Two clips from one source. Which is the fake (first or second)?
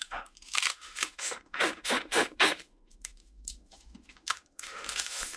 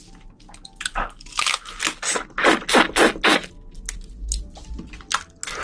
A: first